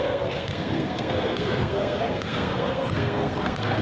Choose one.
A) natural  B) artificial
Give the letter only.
B